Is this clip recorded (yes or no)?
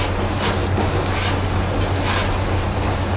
yes